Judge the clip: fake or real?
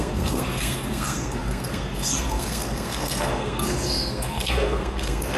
fake